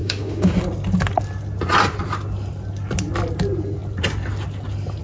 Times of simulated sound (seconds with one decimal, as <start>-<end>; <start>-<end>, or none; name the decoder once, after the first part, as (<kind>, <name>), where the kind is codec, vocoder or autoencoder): 0.0-0.6 (autoencoder, DAC-VAE)